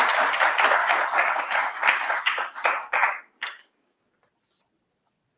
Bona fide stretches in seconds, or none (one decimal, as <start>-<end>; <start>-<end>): 0.0-0.8; 4.0-5.4